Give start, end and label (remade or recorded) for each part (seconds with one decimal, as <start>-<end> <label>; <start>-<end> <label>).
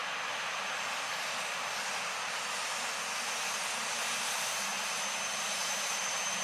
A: 0.0-3.8 recorded; 3.8-6.4 remade